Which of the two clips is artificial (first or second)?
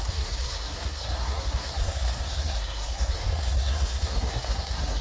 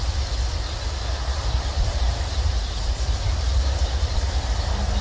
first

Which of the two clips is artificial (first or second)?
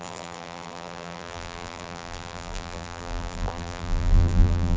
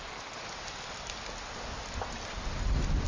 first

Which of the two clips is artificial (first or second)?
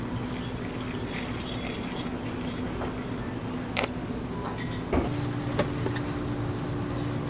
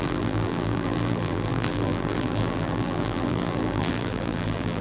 second